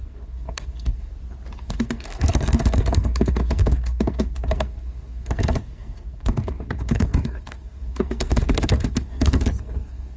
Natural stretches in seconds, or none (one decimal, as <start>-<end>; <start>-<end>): 1.1-1.6